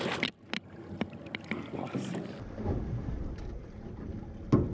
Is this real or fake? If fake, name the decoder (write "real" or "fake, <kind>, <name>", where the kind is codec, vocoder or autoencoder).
real